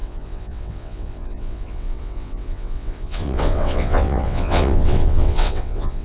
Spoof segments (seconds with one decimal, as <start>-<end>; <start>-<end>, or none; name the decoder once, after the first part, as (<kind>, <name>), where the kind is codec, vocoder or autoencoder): 0.0-6.0 (vocoder, WaveNeXt)